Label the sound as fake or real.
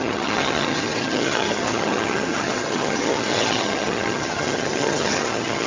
fake